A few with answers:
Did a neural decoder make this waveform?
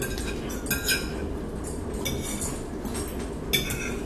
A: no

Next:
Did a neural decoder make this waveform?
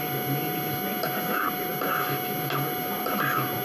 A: no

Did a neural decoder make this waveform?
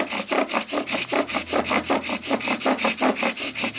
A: no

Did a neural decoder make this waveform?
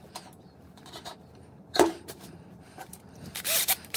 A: yes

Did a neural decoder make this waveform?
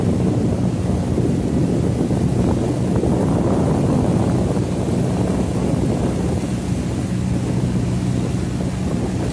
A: no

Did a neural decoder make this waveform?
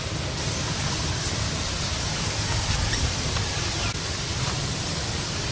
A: no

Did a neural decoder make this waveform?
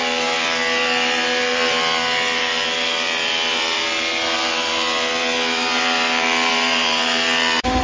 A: yes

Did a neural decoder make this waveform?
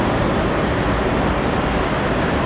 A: no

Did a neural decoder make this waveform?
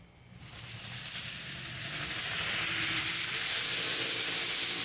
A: yes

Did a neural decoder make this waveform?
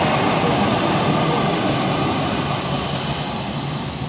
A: no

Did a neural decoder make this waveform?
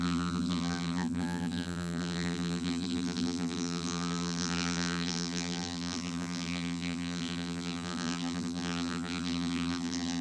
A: yes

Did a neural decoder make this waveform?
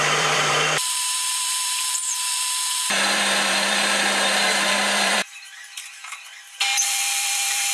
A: yes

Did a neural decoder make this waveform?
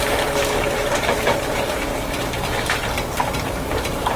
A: yes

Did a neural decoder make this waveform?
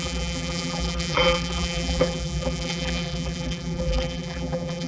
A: yes